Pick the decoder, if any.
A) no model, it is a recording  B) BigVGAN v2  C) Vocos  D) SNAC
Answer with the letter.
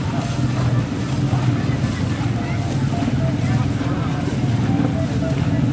A